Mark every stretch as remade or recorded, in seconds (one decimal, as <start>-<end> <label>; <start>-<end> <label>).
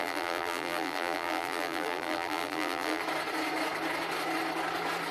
0.0-3.0 remade; 3.0-5.1 recorded